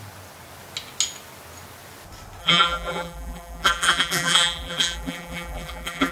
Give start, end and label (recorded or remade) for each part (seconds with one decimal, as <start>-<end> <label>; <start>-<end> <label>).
0.0-2.4 recorded; 2.4-6.1 remade

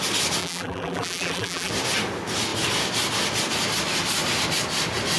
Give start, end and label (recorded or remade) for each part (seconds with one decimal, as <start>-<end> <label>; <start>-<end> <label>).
0.0-0.4 recorded; 0.4-1.7 remade; 1.7-5.2 recorded

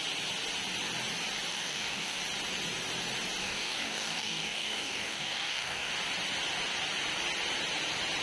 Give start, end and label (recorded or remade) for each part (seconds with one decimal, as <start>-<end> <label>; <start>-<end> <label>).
0.0-1.5 recorded; 1.5-2.2 remade; 2.2-3.4 recorded; 3.4-5.9 remade; 5.9-8.2 recorded

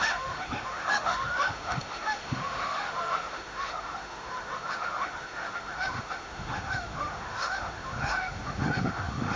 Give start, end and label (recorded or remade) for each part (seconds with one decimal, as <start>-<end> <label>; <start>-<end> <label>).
0.0-9.4 remade

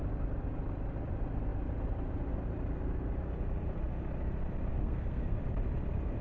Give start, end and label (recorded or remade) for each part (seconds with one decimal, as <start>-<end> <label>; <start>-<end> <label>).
0.0-4.7 recorded; 4.7-5.4 remade; 5.4-6.2 recorded

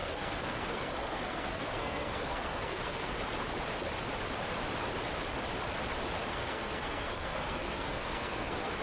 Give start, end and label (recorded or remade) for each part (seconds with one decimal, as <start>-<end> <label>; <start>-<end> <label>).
0.0-3.1 remade; 3.1-6.3 recorded; 6.3-8.8 remade